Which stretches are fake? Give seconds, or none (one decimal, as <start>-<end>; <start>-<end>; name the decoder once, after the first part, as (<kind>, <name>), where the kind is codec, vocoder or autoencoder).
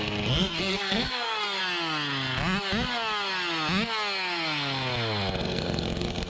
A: 0.0-1.6 (codec, SNAC); 5.4-6.3